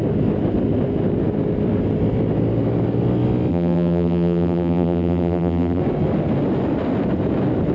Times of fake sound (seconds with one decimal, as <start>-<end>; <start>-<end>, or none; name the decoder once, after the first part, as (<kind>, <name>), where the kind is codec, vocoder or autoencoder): 3.5-5.8 (vocoder, BigVGAN v2)